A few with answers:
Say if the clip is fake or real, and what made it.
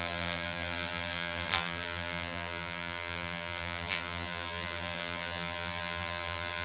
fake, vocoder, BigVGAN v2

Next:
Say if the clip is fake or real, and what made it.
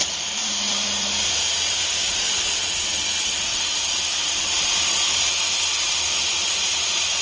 fake, vocoder, BigVGAN v2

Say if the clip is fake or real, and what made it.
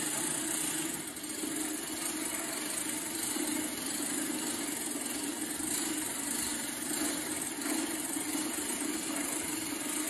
fake, vocoder, BigVGAN v2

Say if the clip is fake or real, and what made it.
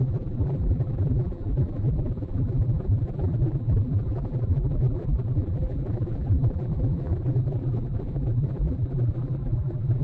fake, vocoder, BigVGAN v2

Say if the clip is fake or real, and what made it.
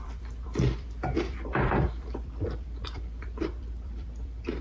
fake, vocoder, BigVGAN v2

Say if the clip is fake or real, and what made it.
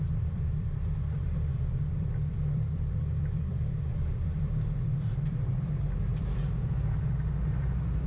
fake, vocoder, BigVGAN v2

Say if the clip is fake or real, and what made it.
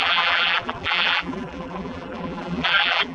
fake, vocoder, BigVGAN v2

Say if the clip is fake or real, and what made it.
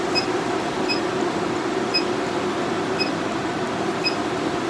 fake, vocoder, BigVGAN v2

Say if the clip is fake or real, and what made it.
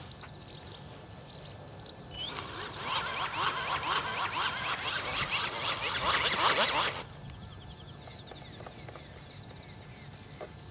real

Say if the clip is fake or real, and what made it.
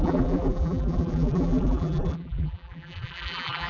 fake, vocoder, BigVGAN v2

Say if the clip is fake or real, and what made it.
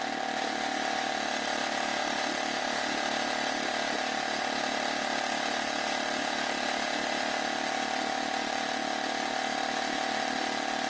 real